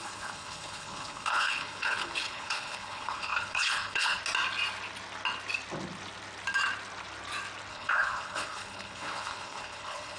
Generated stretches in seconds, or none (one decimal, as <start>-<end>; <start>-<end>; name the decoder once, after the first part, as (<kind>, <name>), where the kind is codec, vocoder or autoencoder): 0.0-4.2 (codec, HILCodec); 7.7-10.2